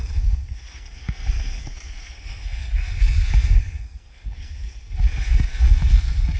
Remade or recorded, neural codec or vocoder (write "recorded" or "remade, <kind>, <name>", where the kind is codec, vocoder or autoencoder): remade, codec, SNAC